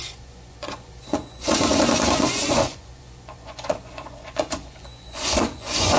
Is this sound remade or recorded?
remade